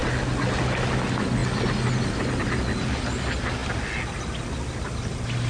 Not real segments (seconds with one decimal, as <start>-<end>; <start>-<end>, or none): none